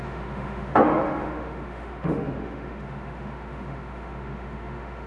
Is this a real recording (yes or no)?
no